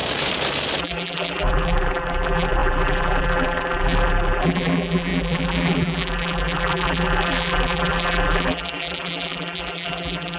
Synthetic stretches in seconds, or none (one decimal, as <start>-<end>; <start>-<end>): 0.8-10.4

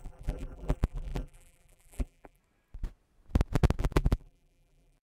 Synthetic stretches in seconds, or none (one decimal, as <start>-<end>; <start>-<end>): 0.0-2.4; 3.8-5.2

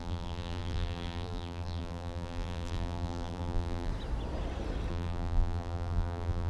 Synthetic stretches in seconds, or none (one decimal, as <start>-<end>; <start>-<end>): 0.0-3.9; 4.9-6.5

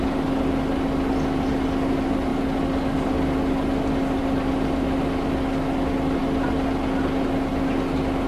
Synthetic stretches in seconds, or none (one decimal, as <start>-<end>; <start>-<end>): none